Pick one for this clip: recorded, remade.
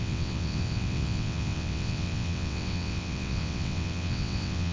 remade